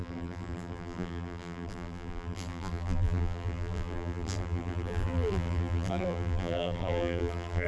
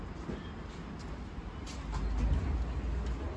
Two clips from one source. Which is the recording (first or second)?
second